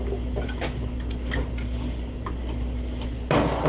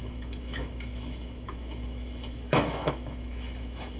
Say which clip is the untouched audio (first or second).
first